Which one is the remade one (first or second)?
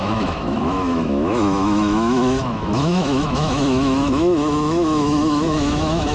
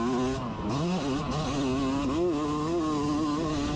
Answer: first